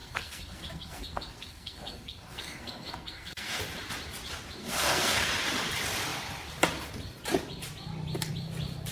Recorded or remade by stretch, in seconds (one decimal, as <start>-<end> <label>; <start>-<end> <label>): 0.0-3.6 remade; 3.6-4.6 recorded; 4.6-5.3 remade; 5.3-8.9 recorded